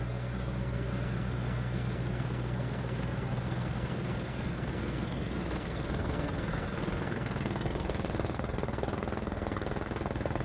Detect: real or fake fake